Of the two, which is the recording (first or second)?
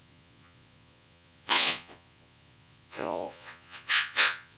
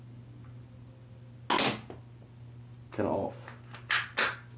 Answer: second